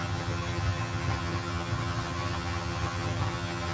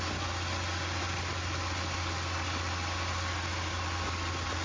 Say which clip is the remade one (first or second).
first